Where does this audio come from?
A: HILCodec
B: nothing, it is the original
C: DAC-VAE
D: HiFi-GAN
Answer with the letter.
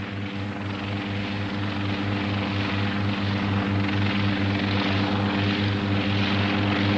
B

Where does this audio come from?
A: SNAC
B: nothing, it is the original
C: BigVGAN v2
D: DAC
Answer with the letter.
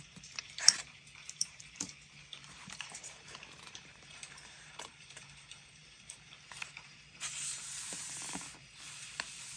C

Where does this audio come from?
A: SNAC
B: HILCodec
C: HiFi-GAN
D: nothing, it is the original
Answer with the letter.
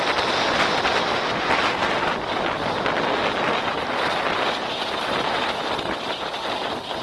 D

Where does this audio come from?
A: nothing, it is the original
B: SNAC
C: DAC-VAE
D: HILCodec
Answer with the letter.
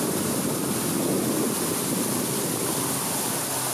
A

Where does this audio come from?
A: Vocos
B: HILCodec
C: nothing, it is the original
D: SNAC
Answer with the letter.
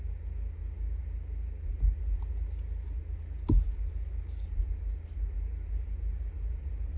C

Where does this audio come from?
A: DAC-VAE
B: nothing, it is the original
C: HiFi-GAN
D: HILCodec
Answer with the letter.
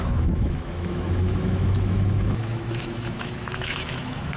A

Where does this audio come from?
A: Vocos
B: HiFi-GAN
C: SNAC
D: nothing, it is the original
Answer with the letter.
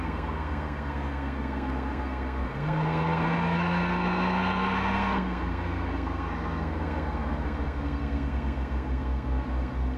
C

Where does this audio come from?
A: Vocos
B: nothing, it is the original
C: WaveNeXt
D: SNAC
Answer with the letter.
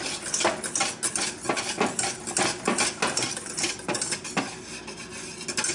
B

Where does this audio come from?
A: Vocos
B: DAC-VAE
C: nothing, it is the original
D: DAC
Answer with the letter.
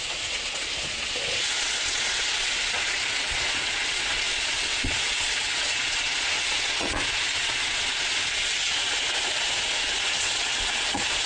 A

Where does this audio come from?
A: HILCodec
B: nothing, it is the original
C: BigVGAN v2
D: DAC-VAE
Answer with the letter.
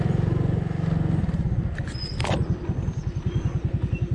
B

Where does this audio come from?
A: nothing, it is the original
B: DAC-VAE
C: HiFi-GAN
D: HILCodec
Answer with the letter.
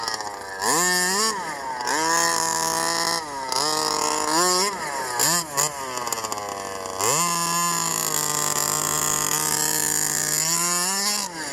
A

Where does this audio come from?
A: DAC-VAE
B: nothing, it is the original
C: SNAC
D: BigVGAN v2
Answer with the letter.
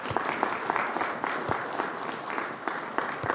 B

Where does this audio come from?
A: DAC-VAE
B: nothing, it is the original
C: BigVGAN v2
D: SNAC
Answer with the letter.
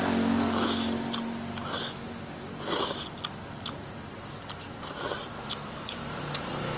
B